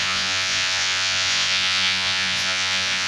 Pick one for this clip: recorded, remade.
remade